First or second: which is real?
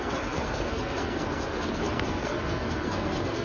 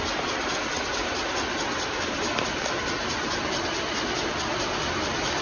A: second